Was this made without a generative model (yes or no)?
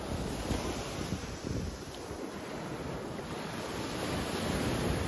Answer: yes